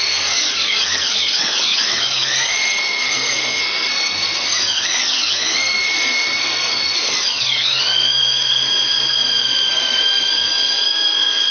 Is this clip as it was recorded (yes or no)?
no